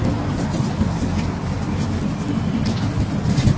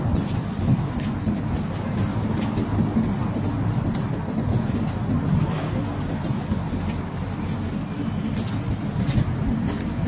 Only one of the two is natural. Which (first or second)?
second